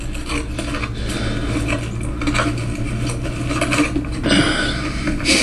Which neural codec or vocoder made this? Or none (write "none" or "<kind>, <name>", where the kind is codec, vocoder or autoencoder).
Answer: none